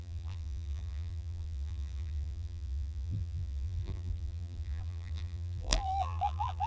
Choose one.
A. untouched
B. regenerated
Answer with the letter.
B